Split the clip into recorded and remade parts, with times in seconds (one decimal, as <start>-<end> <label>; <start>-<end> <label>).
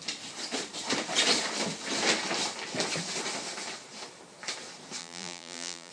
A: 0.0-5.0 recorded; 5.0-5.9 remade